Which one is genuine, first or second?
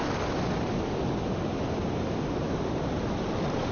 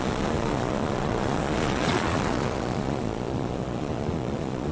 first